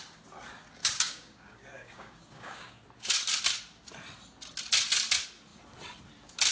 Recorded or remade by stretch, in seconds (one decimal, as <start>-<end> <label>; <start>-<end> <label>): 0.0-0.8 recorded; 0.8-2.8 remade; 2.8-6.5 recorded